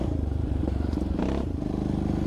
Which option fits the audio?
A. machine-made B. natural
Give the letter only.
A